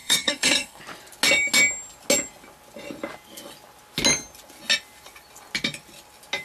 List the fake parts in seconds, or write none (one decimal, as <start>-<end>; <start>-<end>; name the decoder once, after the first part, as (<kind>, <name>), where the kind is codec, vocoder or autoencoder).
0.0-0.8 (codec, SNAC)